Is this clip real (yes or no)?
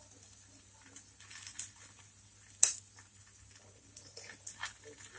no